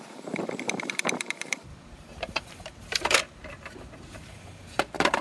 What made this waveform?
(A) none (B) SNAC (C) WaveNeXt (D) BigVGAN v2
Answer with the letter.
D